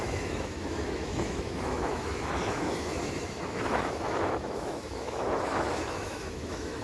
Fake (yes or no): yes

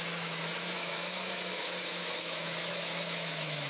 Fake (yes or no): yes